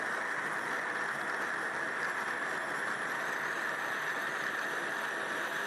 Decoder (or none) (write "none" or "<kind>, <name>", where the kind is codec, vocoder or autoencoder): none